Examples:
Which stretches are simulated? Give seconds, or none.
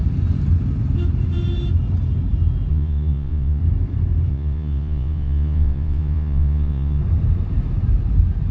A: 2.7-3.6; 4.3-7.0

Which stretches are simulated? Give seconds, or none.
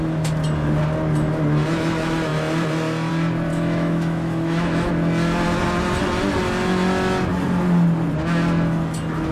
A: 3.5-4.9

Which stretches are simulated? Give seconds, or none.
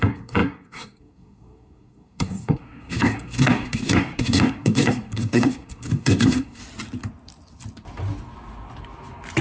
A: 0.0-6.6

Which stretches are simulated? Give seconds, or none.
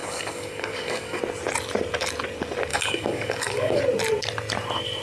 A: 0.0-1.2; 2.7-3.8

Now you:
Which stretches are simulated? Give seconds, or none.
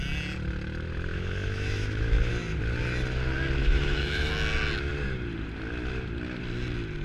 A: 1.1-2.3; 3.6-4.3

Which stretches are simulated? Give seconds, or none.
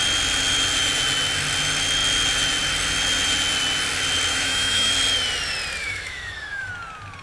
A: 4.3-4.9; 5.8-6.7